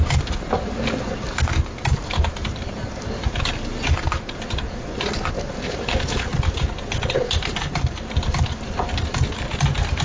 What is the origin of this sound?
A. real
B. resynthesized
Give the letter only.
A